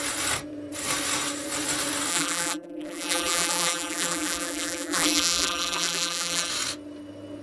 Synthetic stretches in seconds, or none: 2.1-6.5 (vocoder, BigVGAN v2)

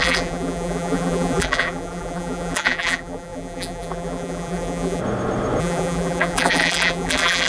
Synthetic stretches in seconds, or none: 0.0-5.0 (vocoder, BigVGAN v2); 5.6-7.5

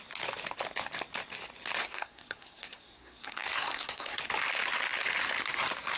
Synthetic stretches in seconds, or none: 1.8-4.2 (codec, SNAC)

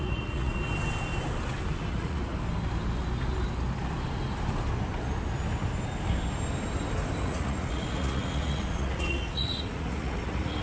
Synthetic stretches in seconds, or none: 0.0-0.6 (vocoder, Vocos); 1.9-2.3; 7.2-10.6

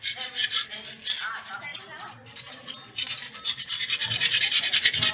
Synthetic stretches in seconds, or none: none

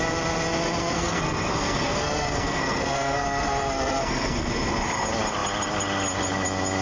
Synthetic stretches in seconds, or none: 0.8-4.5 (codec, SNAC)

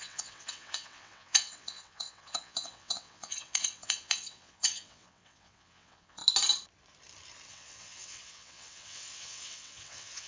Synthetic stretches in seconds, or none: 0.0-6.2 (vocoder, WaveNeXt); 7.5-10.3

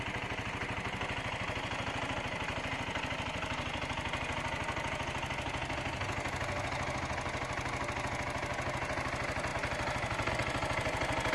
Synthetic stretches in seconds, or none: none